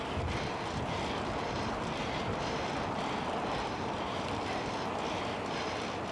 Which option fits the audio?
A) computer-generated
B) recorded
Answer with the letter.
B